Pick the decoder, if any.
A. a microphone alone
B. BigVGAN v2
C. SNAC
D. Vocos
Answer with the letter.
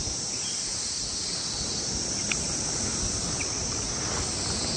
A